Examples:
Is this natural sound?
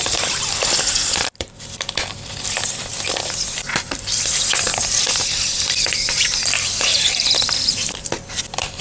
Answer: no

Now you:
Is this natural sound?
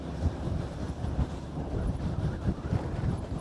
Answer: no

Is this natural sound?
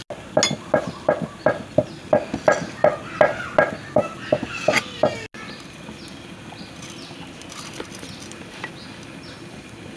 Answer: yes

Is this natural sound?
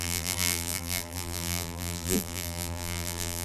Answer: no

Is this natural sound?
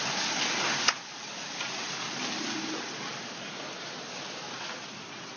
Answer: yes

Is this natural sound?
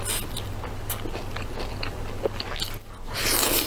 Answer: yes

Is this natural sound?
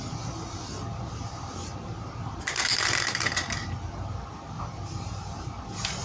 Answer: no